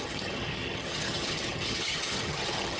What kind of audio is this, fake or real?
fake